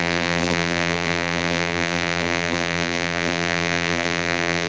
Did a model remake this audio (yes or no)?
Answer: yes